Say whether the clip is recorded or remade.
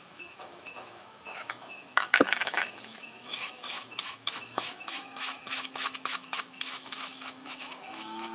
remade